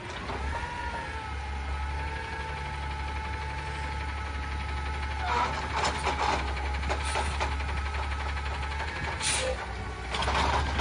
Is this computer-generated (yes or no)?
no